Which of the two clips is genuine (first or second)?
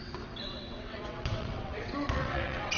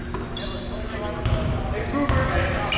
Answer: second